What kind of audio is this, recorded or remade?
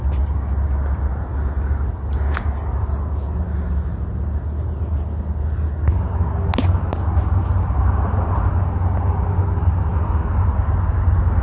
recorded